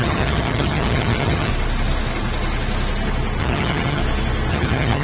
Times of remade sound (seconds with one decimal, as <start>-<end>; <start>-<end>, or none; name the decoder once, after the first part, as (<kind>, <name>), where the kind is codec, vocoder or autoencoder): 0.0-1.5 (vocoder, HiFi-GAN); 3.4-4.0; 4.5-5.0